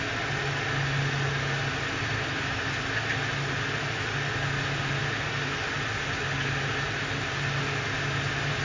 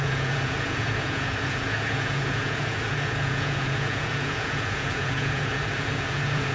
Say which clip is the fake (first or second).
second